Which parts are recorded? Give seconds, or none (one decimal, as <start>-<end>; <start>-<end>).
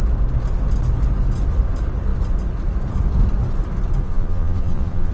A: 0.0-4.0